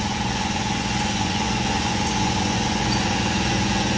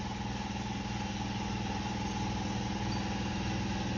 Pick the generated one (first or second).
first